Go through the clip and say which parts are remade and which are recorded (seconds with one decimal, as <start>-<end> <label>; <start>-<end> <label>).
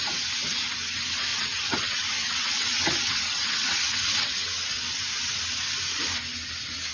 0.0-1.3 recorded; 1.3-5.4 remade; 5.4-6.9 recorded